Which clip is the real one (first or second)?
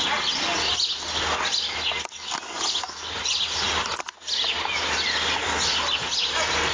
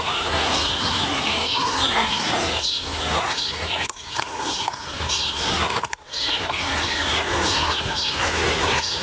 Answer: first